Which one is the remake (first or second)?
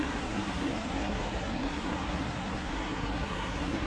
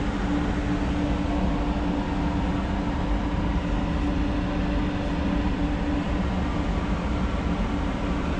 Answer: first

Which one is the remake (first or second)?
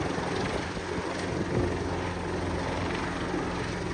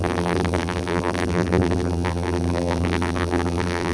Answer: second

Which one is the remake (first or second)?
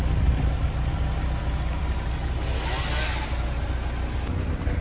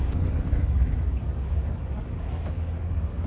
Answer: second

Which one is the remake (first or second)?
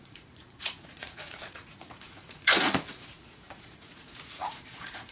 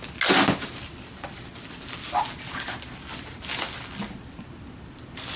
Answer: first